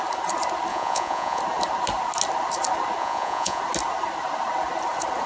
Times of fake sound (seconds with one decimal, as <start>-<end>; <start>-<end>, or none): 0.7-1.4; 3.0-3.6